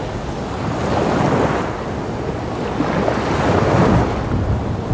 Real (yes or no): yes